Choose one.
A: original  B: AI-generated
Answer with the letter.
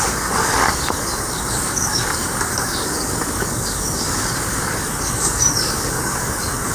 B